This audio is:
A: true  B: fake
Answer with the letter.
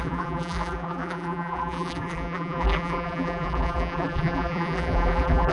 B